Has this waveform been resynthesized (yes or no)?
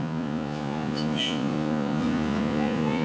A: yes